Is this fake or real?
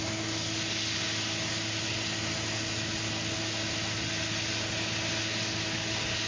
real